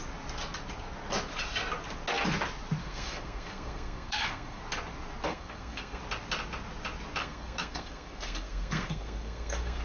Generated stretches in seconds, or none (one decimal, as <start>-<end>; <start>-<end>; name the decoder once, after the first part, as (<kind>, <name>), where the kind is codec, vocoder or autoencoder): 2.8-4.6 (codec, SNAC); 5.3-6.0; 7.2-9.8